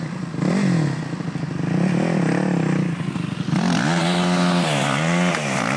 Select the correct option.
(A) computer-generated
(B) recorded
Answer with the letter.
B